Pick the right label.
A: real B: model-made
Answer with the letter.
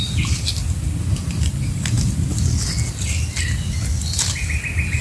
A